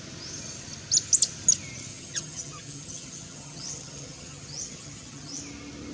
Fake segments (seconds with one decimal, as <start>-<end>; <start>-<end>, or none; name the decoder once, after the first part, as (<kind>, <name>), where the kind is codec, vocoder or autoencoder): 1.9-5.4 (vocoder, HiFi-GAN)